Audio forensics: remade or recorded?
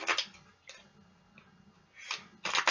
recorded